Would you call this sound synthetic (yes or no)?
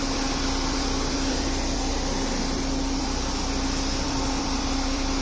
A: yes